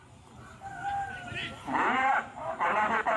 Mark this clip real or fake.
real